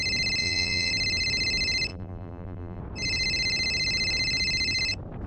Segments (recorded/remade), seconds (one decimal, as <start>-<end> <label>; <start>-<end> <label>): 0.0-0.4 recorded; 0.4-0.9 remade; 0.9-1.9 recorded; 1.9-2.8 remade; 2.8-5.3 recorded